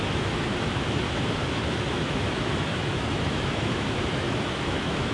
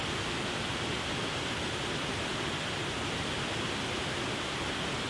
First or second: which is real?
second